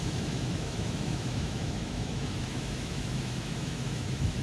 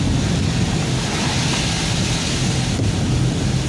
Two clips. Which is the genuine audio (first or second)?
second